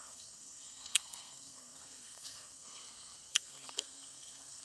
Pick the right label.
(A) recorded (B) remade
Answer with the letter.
B